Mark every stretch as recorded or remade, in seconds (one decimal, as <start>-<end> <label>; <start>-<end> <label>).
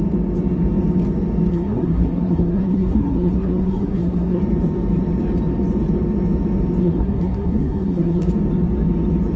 0.0-1.5 recorded; 1.5-4.4 remade; 4.4-6.8 recorded; 6.8-8.3 remade; 8.3-9.4 recorded